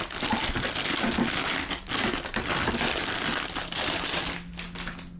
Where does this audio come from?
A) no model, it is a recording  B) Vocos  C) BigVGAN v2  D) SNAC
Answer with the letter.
A